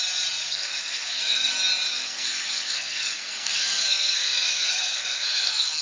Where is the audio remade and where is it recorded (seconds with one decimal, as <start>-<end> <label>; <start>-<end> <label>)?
0.0-0.4 recorded; 0.4-1.5 remade; 1.5-1.9 recorded; 1.9-5.8 remade